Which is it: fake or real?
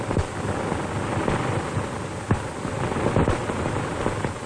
real